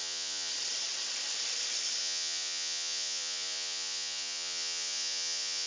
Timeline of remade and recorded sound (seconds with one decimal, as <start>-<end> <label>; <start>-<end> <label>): 0.0-0.5 remade; 0.5-2.0 recorded; 2.0-5.7 remade